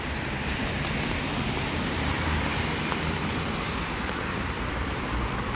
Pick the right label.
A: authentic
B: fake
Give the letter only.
B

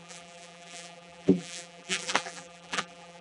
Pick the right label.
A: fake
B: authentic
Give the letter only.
A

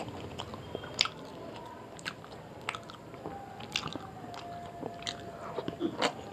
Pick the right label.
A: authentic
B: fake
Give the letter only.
A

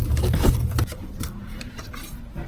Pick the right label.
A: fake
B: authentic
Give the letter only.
A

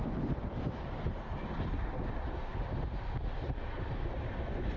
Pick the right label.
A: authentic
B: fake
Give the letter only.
A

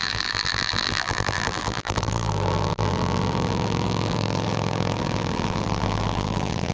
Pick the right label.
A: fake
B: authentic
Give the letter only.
A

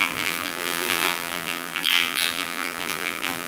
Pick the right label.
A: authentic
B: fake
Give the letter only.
B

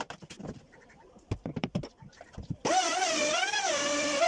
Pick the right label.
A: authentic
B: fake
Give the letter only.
B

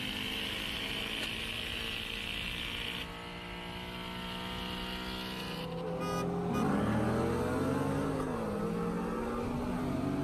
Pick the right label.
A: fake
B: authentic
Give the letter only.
B